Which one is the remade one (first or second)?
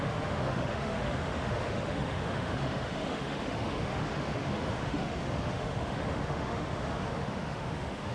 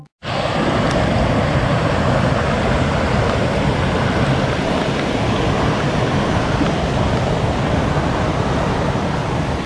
first